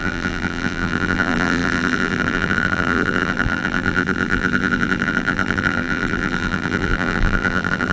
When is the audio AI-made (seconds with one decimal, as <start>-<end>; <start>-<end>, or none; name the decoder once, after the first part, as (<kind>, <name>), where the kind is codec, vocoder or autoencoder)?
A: 0.0-7.9 (vocoder, BigVGAN v2)

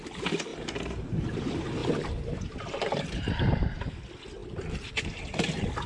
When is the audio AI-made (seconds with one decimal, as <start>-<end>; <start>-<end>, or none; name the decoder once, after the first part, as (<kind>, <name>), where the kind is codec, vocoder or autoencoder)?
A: 0.5-1.4 (vocoder, BigVGAN v2); 1.8-3.8

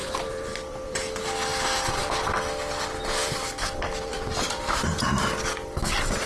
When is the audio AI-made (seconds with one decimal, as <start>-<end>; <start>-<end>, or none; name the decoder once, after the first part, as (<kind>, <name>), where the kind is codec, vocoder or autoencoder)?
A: 0.0-1.0 (vocoder, BigVGAN v2); 3.2-4.8

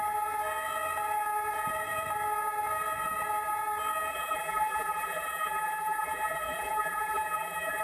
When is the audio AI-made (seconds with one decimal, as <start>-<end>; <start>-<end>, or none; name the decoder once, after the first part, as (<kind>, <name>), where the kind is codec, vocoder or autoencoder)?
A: 4.1-7.8 (vocoder, BigVGAN v2)

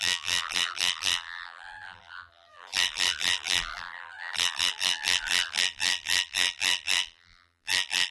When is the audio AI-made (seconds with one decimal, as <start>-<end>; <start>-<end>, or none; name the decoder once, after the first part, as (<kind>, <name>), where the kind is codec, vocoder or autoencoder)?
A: 0.0-8.1 (vocoder, BigVGAN v2)

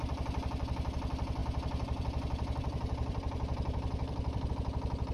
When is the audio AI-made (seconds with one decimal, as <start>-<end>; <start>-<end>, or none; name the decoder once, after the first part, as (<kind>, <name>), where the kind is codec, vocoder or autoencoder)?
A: 1.4-4.5 (vocoder, BigVGAN v2)

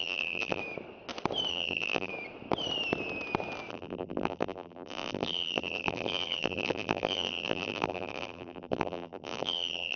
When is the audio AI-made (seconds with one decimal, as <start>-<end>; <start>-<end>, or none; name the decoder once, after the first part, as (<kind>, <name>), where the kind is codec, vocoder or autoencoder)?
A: 0.0-0.6 (vocoder, BigVGAN v2); 1.5-2.1; 3.7-10.0